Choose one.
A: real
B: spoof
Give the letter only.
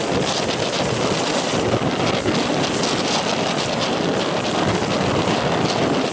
A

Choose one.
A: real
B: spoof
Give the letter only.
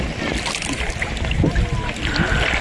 A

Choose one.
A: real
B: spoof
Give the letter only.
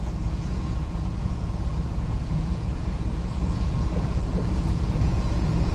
B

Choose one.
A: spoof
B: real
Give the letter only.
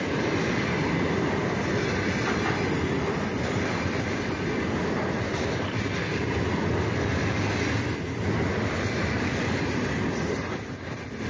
B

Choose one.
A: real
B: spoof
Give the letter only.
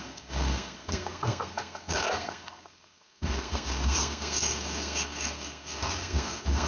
B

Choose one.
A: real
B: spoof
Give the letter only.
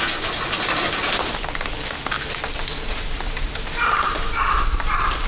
A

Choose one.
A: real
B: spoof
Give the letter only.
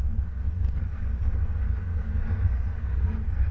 B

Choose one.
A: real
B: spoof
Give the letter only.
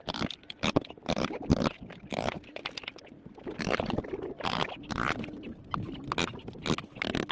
A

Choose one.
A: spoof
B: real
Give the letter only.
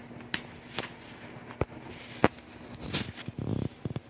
B